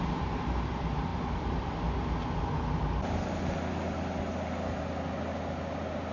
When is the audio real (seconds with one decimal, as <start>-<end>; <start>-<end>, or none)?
0.0-6.1